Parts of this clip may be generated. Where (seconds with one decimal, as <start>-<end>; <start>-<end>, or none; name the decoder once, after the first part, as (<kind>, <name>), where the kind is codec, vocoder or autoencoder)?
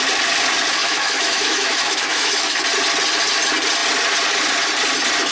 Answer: 0.8-2.6 (autoencoder, DAC-VAE)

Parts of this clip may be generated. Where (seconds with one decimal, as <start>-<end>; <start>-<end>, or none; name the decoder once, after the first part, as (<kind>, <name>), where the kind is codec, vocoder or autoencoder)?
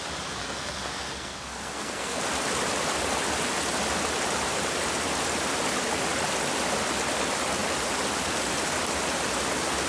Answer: 0.4-2.2 (codec, SNAC)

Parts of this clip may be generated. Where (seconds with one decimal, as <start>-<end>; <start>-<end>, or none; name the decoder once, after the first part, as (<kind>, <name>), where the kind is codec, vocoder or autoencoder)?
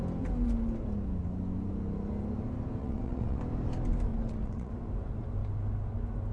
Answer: 2.8-3.4 (vocoder, WaveNeXt); 4.1-4.7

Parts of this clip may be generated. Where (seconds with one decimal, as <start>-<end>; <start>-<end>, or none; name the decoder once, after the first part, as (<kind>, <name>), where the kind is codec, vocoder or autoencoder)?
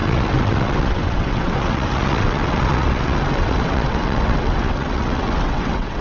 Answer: 0.0-6.0 (vocoder, WaveNeXt)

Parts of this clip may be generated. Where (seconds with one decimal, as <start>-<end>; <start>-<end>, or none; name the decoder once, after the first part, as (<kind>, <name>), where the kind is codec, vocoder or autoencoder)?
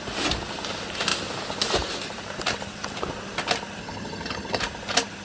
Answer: 3.8-4.6 (vocoder, HiFi-GAN)